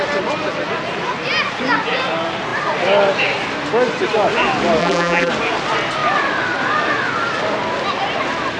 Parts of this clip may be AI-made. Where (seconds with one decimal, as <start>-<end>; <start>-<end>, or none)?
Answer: 4.8-5.3